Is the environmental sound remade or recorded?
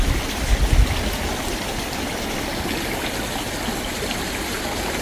recorded